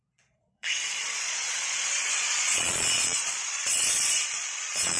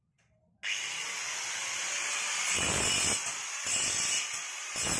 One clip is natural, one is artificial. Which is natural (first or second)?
second